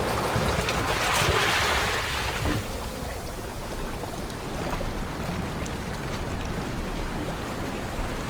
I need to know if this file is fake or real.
real